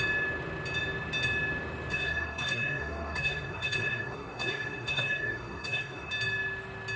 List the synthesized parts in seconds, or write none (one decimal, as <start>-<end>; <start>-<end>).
1.9-6.1